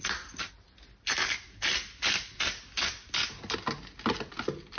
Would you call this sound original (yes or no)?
yes